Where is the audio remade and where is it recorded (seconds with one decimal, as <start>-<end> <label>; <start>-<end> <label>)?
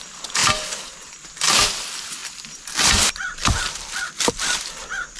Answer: 0.0-5.2 recorded